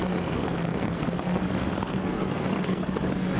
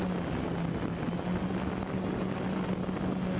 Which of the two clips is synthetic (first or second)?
first